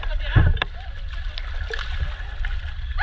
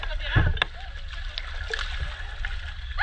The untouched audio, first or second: second